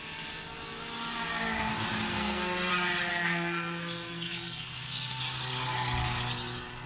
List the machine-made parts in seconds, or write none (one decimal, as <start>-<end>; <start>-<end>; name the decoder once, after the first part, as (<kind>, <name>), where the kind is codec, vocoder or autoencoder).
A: 2.1-2.7 (codec, SNAC); 3.1-5.2